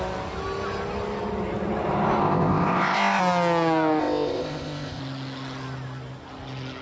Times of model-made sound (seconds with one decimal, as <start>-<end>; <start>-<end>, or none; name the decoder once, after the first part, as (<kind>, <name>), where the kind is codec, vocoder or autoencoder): 2.2-3.2 (codec, ZipCodec); 4.0-5.0